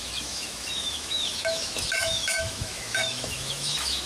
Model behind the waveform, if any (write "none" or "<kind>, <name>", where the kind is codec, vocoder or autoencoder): autoencoder, DAC-VAE